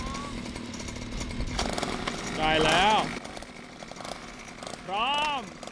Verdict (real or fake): real